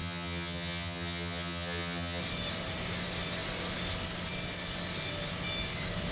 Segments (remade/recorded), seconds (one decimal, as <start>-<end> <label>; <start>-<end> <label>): 0.0-2.2 remade; 2.2-6.1 recorded